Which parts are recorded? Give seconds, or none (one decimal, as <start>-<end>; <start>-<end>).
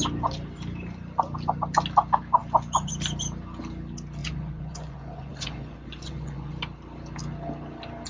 0.0-4.2; 6.5-8.1